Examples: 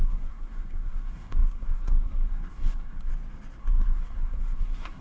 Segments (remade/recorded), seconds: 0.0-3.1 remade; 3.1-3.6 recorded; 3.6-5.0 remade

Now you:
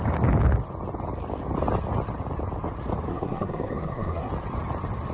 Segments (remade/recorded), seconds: 0.0-3.1 recorded; 3.1-4.3 remade; 4.3-5.1 recorded

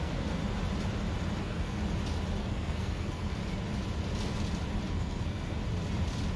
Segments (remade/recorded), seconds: 0.0-0.4 remade; 0.4-1.4 recorded; 1.4-1.8 remade; 1.8-2.4 recorded; 2.4-3.4 remade; 3.4-4.9 recorded; 4.9-5.6 remade; 5.6-6.4 recorded

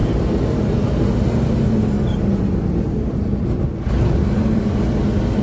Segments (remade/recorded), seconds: 0.0-5.4 recorded

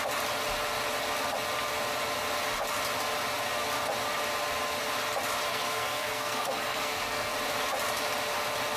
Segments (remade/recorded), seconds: 0.0-5.5 recorded; 5.5-7.3 remade; 7.3-8.8 recorded

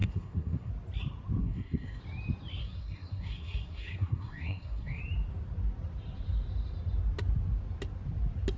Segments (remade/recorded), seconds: 0.0-0.7 remade; 0.7-1.4 recorded; 1.4-2.0 remade; 2.0-2.6 recorded; 2.6-5.0 remade; 5.0-8.6 recorded

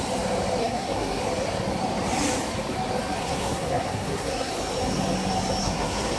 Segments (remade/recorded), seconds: 0.0-0.6 recorded; 0.6-1.2 remade; 1.2-3.2 recorded; 3.2-4.5 remade; 4.5-5.6 recorded; 5.6-6.2 remade